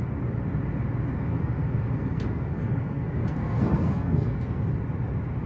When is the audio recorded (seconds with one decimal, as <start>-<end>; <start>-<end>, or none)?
0.0-1.3; 4.6-5.5